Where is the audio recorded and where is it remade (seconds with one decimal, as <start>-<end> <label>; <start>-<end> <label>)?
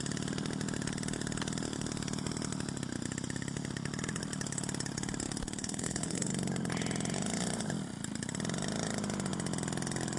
0.0-5.6 recorded; 5.6-6.3 remade; 6.3-10.2 recorded